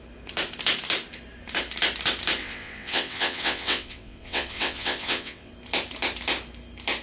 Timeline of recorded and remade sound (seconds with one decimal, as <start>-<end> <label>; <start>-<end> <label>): 0.0-2.4 recorded; 2.4-5.5 remade; 5.5-7.0 recorded